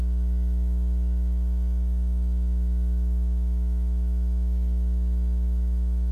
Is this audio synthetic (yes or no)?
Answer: yes